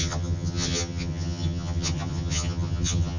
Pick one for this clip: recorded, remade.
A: remade